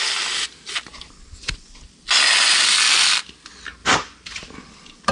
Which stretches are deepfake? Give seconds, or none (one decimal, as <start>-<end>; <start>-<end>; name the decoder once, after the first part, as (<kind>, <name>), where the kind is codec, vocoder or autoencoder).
3.8-5.1 (vocoder, BigVGAN v2)